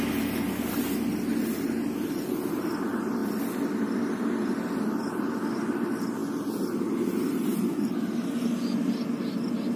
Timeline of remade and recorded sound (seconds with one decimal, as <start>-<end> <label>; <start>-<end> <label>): 0.0-9.8 recorded